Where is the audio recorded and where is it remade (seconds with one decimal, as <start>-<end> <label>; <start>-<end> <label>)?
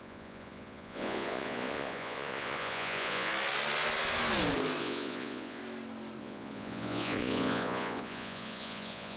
0.0-3.3 remade; 3.3-4.8 recorded; 4.8-5.6 remade; 5.6-6.2 recorded; 6.2-9.2 remade